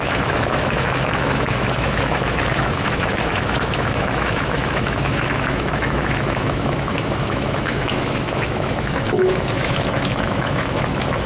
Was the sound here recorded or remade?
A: remade